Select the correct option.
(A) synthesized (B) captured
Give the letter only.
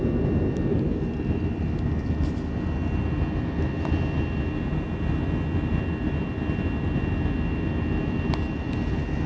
B